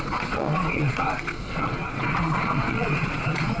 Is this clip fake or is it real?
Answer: fake